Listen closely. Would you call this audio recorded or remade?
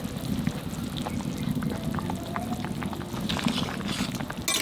recorded